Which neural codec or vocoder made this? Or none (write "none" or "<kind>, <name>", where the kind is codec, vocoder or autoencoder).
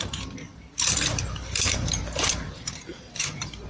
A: vocoder, BigVGAN v2